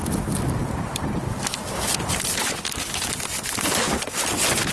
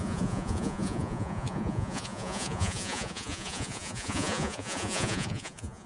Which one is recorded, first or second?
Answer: first